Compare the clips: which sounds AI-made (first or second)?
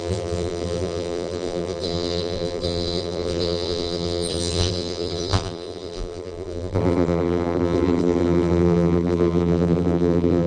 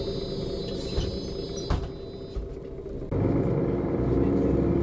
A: first